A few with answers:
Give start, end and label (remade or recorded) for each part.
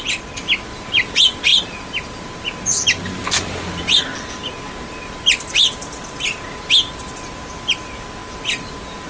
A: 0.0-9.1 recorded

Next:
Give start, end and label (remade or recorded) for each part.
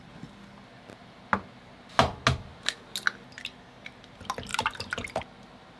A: 0.0-5.8 recorded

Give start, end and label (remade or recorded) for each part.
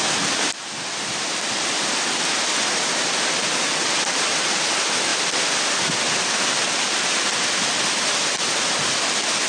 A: 0.0-9.5 recorded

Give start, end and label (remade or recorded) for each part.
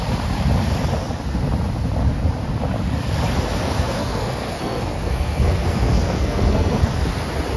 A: 0.0-3.6 recorded; 3.6-7.1 remade; 7.1-7.6 recorded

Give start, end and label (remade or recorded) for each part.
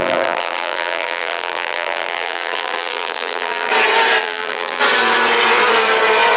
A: 0.0-3.7 remade; 3.7-4.2 recorded; 4.2-4.8 remade; 4.8-6.4 recorded